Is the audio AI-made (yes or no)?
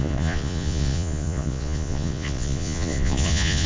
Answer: yes